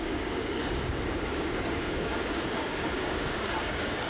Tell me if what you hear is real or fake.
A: fake